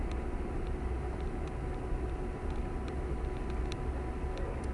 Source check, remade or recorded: recorded